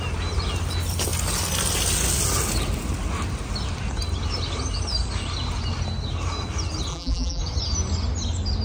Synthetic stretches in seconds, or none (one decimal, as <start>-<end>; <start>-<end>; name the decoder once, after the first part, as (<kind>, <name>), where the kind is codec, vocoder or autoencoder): 6.9-7.4 (vocoder, BigVGAN v2)